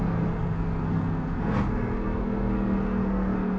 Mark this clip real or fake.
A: fake